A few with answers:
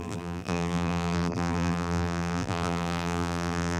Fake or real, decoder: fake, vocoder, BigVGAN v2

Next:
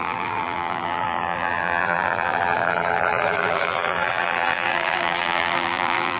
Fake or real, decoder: fake, vocoder, BigVGAN v2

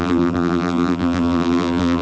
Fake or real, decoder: fake, vocoder, BigVGAN v2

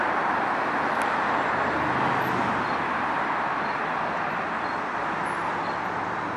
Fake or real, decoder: real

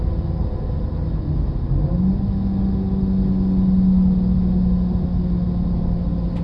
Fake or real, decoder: real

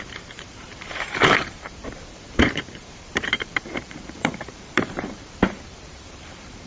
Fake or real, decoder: fake, vocoder, BigVGAN v2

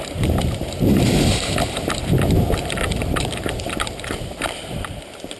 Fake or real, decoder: fake, vocoder, BigVGAN v2